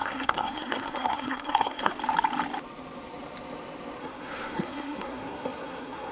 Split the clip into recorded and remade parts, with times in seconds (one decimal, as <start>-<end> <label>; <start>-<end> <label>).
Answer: 0.0-1.9 remade; 1.9-4.0 recorded; 4.0-6.1 remade